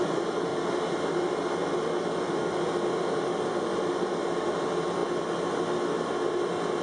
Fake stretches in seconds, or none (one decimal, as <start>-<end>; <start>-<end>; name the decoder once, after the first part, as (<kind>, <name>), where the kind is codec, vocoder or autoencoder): none